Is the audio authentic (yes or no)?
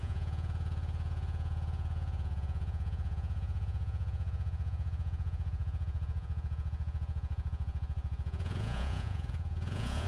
no